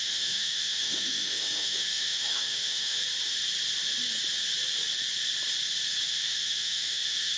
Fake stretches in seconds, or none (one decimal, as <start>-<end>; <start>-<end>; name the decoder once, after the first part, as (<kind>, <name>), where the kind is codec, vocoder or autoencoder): 0.0-3.0 (autoencoder, DAC-VAE); 6.1-7.4